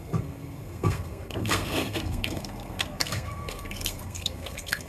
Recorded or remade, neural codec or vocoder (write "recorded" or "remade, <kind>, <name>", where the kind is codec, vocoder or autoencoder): remade, codec, SNAC